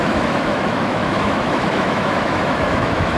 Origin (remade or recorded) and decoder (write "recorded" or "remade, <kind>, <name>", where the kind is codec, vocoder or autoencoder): remade, autoencoder, DAC-VAE